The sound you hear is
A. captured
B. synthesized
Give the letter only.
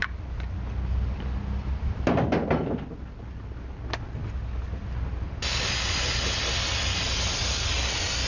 A